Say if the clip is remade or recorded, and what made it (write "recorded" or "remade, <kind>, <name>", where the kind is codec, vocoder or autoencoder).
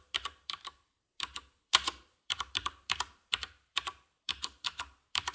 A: remade, vocoder, BigVGAN v2